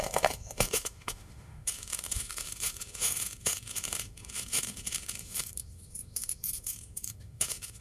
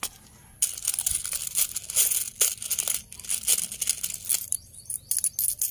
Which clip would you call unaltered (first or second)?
second